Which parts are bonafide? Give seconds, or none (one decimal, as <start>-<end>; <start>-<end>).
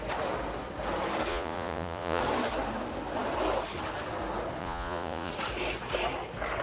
0.0-1.3; 2.2-4.6; 5.3-6.6